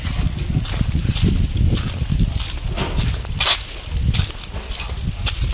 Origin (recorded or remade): recorded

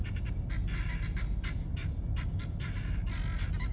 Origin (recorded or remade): recorded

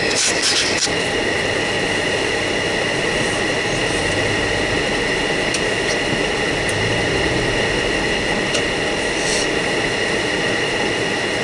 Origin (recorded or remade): recorded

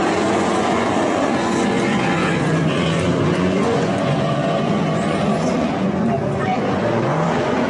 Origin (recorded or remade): remade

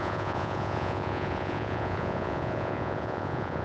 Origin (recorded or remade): remade